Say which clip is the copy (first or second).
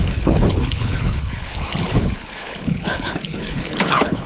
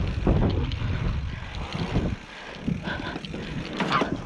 first